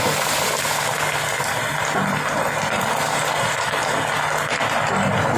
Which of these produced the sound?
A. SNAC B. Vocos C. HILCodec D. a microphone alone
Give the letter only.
D